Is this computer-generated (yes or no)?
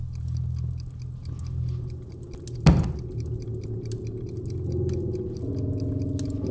no